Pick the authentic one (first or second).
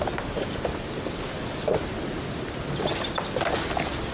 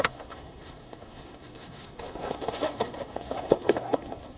first